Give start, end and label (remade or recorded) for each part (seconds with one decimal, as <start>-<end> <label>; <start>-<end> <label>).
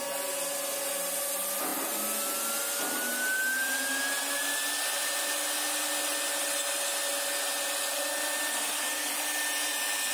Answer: 0.0-10.1 recorded